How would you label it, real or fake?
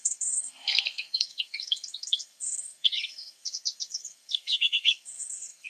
fake